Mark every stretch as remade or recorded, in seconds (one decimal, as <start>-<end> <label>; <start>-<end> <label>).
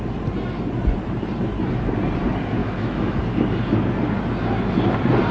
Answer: 0.0-2.6 recorded; 2.6-3.2 remade; 3.2-5.3 recorded